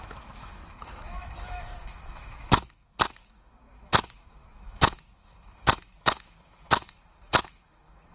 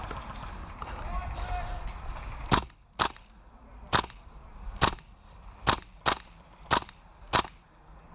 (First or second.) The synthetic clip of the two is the first